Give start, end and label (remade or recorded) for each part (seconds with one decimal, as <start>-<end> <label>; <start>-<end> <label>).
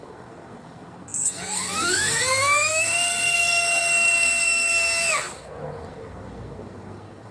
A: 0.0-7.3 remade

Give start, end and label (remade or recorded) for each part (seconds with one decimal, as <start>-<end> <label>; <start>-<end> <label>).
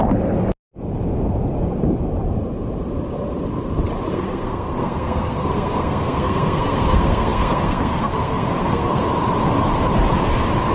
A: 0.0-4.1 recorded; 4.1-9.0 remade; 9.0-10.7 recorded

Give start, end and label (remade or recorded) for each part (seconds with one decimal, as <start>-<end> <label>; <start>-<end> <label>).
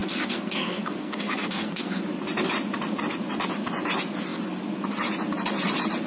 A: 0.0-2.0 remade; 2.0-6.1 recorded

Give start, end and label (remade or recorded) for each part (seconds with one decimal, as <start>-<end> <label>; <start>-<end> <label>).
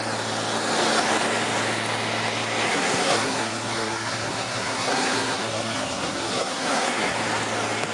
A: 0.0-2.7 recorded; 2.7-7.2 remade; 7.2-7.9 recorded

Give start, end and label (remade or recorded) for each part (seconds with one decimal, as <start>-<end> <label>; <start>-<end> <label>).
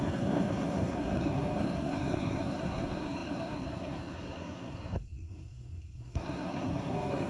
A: 0.0-7.3 remade